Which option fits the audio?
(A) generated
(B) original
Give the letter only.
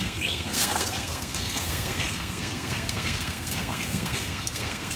A